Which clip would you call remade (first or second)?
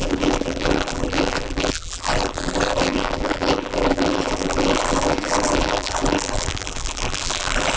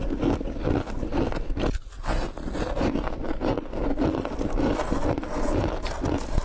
first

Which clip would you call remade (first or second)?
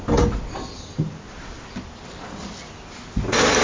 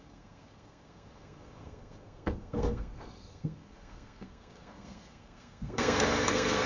second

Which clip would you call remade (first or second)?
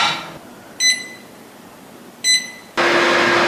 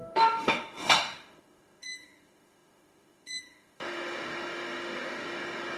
second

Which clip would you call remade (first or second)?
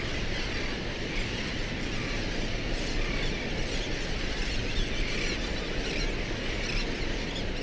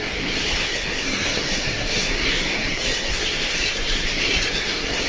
second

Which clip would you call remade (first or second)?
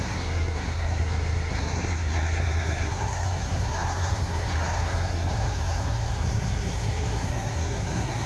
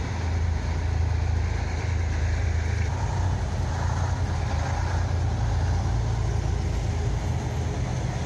first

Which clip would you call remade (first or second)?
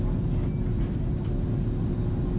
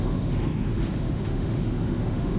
second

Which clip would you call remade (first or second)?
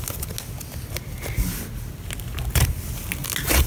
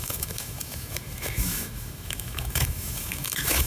second